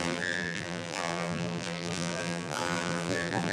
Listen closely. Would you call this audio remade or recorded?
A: remade